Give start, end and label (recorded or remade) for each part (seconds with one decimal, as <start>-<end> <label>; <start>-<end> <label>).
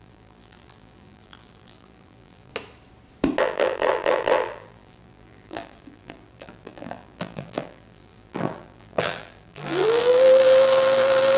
0.0-2.5 remade; 2.5-3.4 recorded; 3.4-11.4 remade